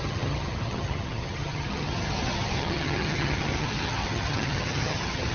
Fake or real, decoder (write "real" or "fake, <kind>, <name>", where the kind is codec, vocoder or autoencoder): fake, vocoder, HiFi-GAN